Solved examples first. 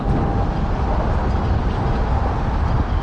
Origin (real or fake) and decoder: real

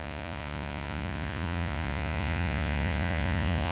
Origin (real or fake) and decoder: fake, vocoder, Vocos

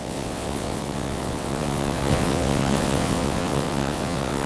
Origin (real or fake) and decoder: fake, vocoder, WaveNeXt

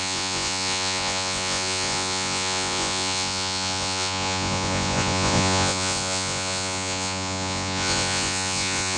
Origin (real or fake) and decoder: fake, vocoder, Vocos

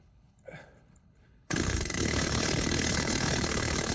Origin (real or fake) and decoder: fake, codec, HILCodec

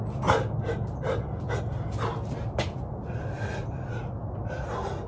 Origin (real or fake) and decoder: real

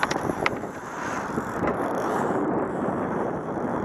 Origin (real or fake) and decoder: fake, vocoder, BigVGAN v2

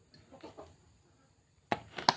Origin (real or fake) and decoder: real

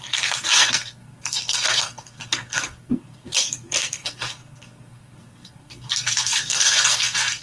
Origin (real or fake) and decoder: fake, codec, SNAC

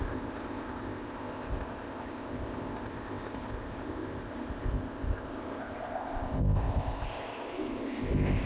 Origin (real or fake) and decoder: fake, codec, ZipCodec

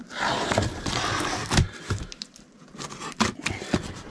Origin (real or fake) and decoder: fake, vocoder, BigVGAN v2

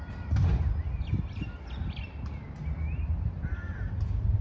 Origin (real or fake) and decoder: real